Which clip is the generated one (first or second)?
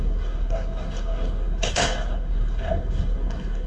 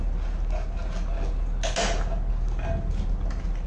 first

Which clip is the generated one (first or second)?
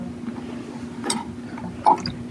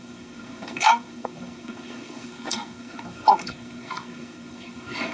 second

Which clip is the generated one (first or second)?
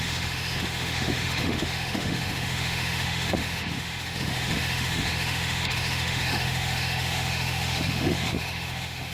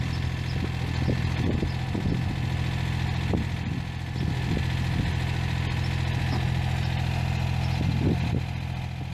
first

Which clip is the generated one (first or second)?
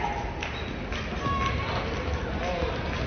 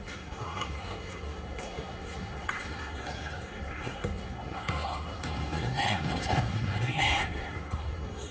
second